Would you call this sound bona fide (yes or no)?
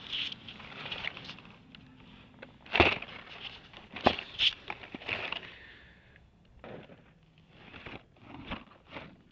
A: yes